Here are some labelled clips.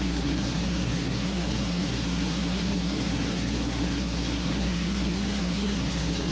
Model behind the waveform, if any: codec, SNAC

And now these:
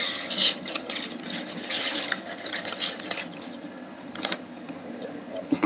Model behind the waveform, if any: vocoder, HiFi-GAN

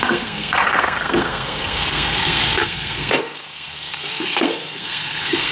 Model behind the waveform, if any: codec, SNAC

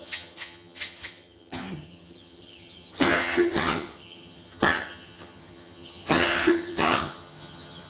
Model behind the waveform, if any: vocoder, HiFi-GAN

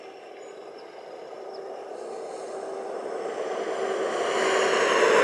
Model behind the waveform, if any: none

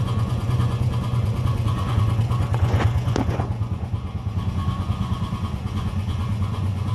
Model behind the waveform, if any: vocoder, Vocos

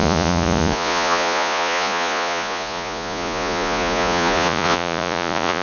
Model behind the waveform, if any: vocoder, Vocos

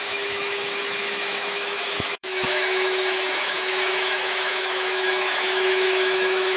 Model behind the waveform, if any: autoencoder, DAC-VAE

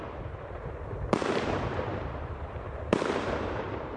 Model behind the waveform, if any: vocoder, BigVGAN v2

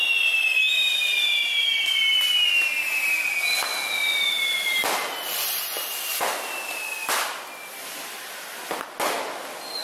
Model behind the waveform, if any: none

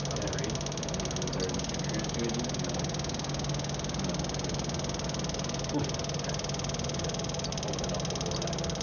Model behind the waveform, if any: none